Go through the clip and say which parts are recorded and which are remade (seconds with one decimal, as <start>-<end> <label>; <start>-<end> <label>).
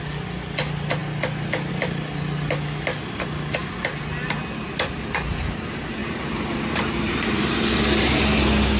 0.0-6.0 recorded; 6.0-7.8 remade; 7.8-8.8 recorded